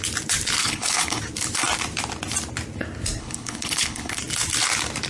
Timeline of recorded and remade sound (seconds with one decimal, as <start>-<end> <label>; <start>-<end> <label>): 0.0-0.6 recorded; 0.6-1.2 remade; 1.2-3.2 recorded; 3.2-4.2 remade; 4.2-5.1 recorded